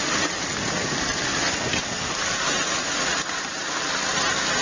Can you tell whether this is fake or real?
real